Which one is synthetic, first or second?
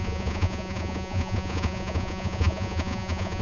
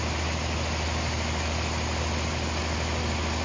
first